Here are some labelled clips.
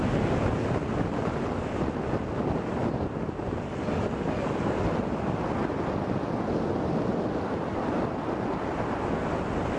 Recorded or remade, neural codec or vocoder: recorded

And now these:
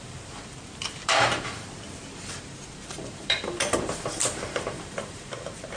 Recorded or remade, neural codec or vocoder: remade, vocoder, BigVGAN v2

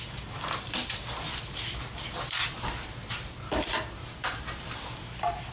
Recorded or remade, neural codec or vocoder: remade, vocoder, BigVGAN v2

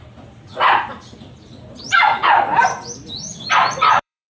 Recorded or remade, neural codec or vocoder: remade, vocoder, BigVGAN v2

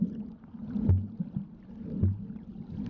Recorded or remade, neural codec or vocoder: recorded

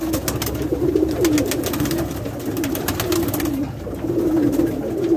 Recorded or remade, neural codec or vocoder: recorded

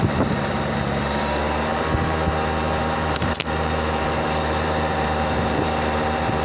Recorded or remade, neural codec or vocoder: remade, vocoder, BigVGAN v2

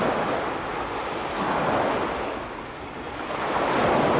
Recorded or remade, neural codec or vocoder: recorded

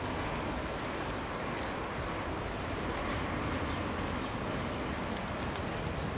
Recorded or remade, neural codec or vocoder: recorded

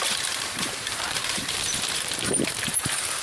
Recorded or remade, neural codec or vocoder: remade, vocoder, BigVGAN v2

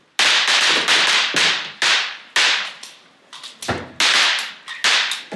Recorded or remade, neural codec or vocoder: recorded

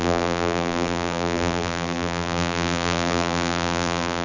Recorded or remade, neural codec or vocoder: remade, vocoder, BigVGAN v2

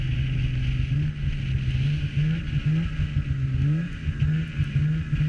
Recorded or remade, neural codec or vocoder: recorded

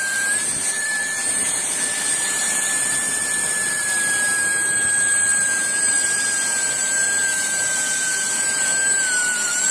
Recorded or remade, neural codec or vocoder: remade, vocoder, BigVGAN v2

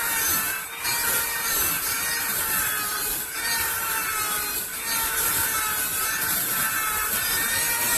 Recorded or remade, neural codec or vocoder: remade, vocoder, BigVGAN v2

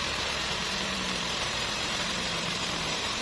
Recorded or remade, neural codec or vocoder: remade, vocoder, BigVGAN v2